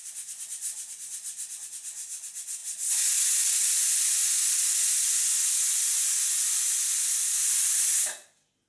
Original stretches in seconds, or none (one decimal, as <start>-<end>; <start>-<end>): 0.0-8.7